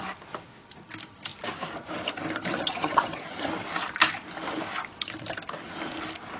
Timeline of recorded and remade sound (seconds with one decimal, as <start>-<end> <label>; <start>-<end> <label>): 0.0-2.6 recorded; 2.6-3.5 remade; 3.5-6.4 recorded